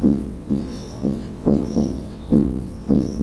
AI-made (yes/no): yes